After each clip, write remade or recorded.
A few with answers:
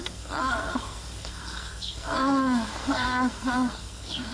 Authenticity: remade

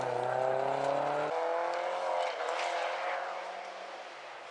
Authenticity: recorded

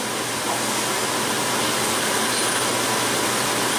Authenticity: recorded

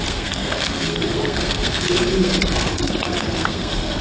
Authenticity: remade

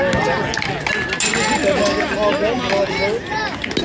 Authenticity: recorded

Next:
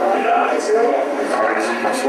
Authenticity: remade